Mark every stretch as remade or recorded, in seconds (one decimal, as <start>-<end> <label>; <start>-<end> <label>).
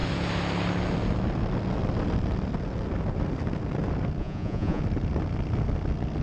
0.0-4.2 recorded; 4.2-4.8 remade; 4.8-6.2 recorded